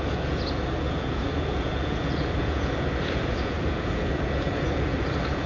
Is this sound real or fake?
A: fake